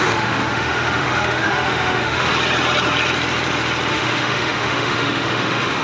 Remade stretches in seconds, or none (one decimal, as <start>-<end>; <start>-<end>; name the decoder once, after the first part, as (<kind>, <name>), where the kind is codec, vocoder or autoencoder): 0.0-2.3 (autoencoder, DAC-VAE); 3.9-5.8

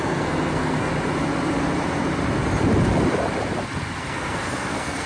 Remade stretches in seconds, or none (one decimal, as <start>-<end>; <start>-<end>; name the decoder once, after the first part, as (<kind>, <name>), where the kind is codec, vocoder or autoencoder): 0.0-0.9 (codec, SNAC); 4.0-5.1

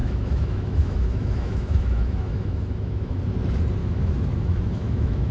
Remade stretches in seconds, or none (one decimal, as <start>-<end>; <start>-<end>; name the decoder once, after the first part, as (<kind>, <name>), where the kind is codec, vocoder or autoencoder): 0.0-3.2 (autoencoder, DAC-VAE); 3.8-5.3

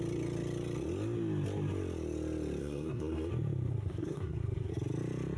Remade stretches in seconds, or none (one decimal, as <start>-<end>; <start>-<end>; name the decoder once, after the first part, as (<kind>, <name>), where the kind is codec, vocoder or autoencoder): 2.6-3.3 (codec, SNAC); 3.7-4.7

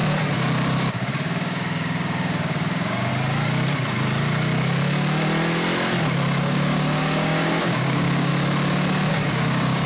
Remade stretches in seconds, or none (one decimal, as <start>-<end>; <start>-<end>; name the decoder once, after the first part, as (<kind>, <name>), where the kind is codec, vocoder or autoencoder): 0.9-3.1 (codec, DAC); 6.4-8.3; 9.1-9.9

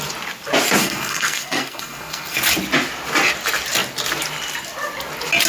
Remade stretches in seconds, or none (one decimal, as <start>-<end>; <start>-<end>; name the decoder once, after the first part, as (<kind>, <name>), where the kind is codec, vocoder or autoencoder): 0.8-2.4 (codec, SNAC)

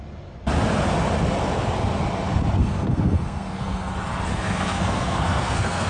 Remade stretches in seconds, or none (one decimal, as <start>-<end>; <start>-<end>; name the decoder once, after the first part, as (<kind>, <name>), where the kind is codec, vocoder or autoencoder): 2.6-3.9 (codec, SNAC); 4.3-5.9